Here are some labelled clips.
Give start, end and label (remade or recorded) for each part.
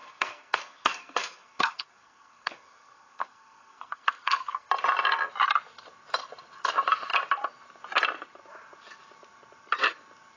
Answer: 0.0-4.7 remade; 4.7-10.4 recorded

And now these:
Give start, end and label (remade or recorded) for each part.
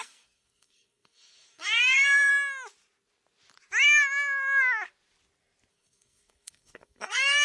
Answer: 0.0-2.3 remade; 2.3-5.7 recorded; 5.7-7.4 remade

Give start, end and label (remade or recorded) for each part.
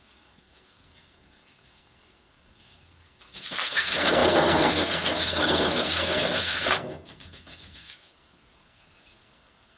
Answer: 0.0-9.8 remade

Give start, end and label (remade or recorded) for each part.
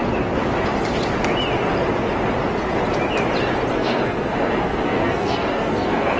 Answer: 0.0-3.7 recorded; 3.7-6.2 remade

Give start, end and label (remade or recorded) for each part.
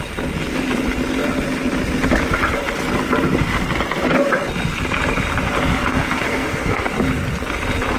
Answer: 0.0-5.9 recorded; 5.9-6.8 remade; 6.8-8.0 recorded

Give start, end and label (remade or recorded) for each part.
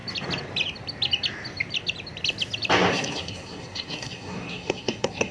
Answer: 0.0-2.9 recorded; 2.9-5.3 remade